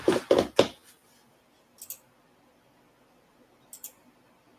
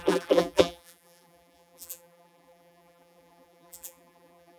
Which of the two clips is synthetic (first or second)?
second